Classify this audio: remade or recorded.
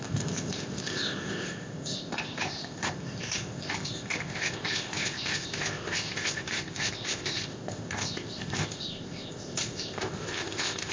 remade